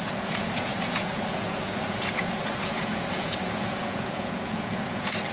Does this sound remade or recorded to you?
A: remade